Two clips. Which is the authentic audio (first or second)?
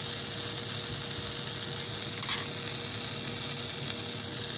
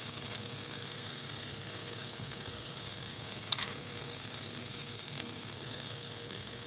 first